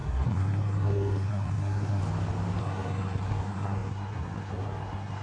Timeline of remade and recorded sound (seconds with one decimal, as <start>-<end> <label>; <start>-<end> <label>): 0.0-2.0 remade; 2.0-2.6 recorded; 2.6-5.2 remade